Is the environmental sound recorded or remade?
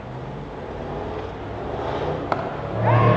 recorded